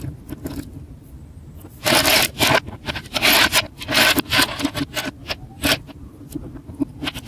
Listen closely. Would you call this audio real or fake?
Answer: real